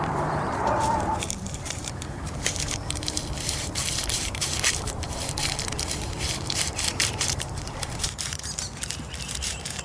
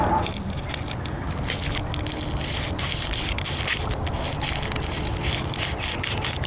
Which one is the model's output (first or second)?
first